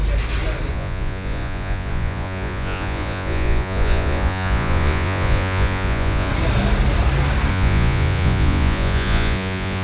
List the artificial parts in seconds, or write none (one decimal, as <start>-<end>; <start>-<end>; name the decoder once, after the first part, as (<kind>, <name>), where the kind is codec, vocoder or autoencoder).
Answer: 0.7-6.3 (vocoder, Vocos); 7.5-9.8